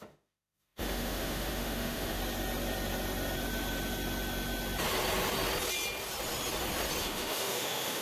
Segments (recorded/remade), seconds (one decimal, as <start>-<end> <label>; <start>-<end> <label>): 0.0-2.2 remade; 2.2-7.0 recorded; 7.0-8.0 remade